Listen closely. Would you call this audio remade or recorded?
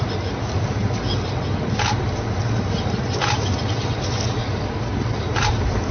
recorded